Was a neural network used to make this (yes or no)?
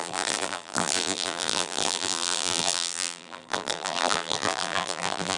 yes